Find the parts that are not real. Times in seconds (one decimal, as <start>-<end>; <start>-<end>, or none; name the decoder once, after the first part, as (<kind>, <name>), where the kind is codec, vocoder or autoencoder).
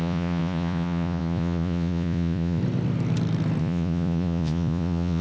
0.0-2.6 (vocoder, Vocos); 3.6-5.2